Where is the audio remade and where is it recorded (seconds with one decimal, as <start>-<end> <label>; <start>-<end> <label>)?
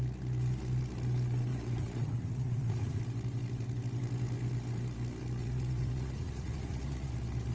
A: 0.0-1.5 recorded; 1.5-3.0 remade; 3.0-5.4 recorded; 5.4-7.1 remade; 7.1-7.5 recorded